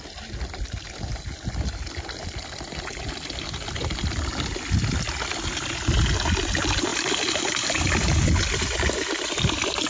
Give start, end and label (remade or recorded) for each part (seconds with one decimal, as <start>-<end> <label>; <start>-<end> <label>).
0.0-9.9 recorded